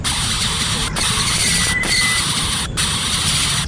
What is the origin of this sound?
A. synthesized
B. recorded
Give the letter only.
B